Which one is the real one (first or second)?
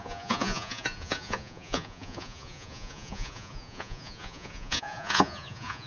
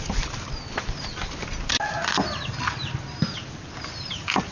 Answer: second